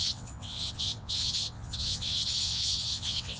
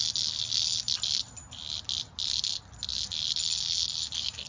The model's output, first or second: first